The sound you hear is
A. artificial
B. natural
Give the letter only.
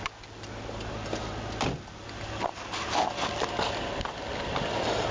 B